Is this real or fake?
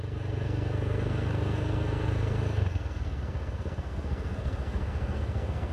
fake